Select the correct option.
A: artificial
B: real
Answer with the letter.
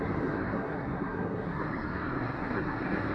A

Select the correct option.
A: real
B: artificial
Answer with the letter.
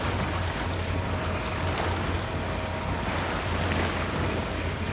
A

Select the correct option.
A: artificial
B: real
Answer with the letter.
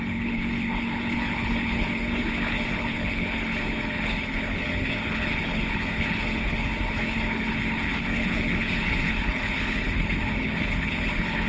A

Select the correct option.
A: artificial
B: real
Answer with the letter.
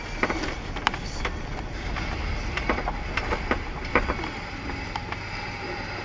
B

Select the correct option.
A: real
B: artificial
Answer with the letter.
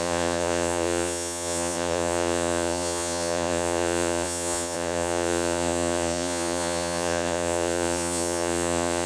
B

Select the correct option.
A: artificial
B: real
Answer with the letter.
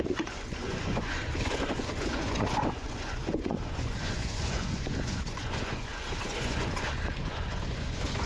A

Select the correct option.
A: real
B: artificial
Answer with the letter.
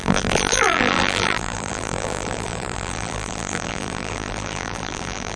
B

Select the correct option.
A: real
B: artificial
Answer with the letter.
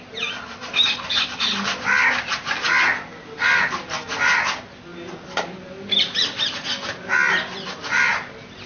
A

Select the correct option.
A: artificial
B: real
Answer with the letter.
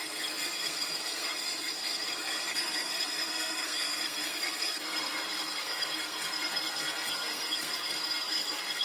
A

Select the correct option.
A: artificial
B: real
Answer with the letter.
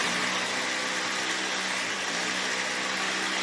B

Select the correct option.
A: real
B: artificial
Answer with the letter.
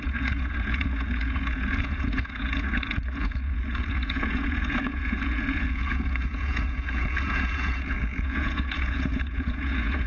B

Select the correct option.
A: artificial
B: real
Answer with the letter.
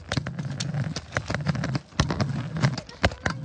B